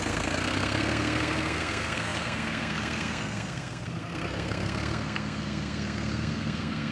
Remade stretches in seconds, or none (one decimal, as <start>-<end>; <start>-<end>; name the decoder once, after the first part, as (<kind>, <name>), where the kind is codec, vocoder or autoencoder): 0.0-6.9 (codec, SNAC)